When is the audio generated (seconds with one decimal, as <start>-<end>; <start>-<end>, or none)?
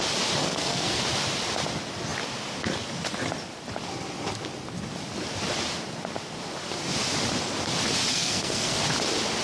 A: 0.4-1.0; 8.1-8.8